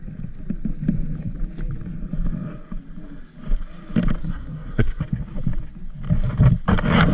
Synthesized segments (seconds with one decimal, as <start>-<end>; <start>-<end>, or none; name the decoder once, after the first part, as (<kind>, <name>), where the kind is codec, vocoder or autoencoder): 4.2-5.0 (codec, SNAC)

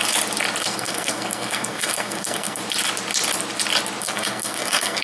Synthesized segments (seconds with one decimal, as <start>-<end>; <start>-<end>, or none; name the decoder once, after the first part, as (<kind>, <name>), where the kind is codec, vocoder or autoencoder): 0.6-2.6 (codec, SNAC); 4.0-5.0